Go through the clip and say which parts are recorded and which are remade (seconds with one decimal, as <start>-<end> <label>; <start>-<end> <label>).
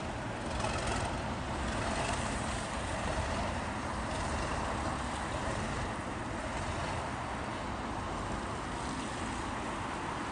0.0-0.9 recorded; 0.9-6.2 remade; 6.2-10.3 recorded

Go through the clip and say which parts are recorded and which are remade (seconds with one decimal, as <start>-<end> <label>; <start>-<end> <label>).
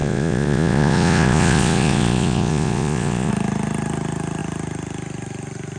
0.0-3.3 remade; 3.3-5.8 recorded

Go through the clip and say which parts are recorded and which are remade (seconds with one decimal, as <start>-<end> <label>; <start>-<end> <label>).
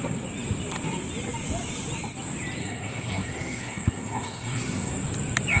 0.0-2.6 recorded; 2.6-4.9 remade; 4.9-5.6 recorded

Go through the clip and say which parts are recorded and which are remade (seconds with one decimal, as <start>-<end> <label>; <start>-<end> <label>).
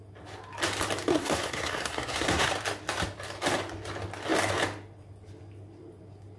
0.0-1.1 recorded; 1.1-2.5 remade; 2.5-6.4 recorded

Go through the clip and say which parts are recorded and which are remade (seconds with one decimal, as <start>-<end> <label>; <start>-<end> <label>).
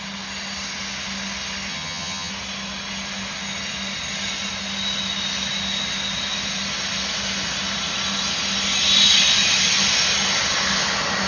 0.0-1.7 recorded; 1.7-2.3 remade; 2.3-11.3 recorded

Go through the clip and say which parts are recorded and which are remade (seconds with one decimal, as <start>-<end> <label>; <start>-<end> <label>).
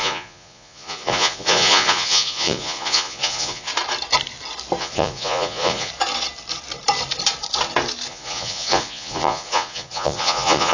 0.0-3.7 remade; 3.7-4.8 recorded; 4.8-5.9 remade; 5.9-8.1 recorded; 8.1-10.7 remade